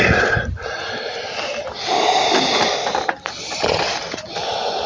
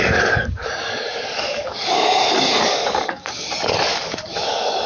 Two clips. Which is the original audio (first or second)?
first